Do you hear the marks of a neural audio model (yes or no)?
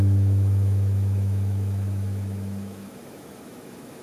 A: yes